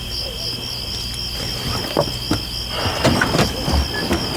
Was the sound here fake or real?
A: real